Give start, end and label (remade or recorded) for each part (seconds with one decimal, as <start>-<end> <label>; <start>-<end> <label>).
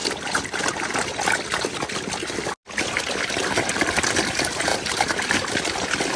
0.0-4.7 recorded; 4.7-5.5 remade; 5.5-6.2 recorded